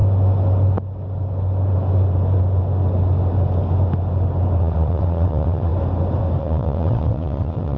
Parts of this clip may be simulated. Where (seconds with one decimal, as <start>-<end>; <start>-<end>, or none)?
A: 4.6-5.7; 6.4-7.8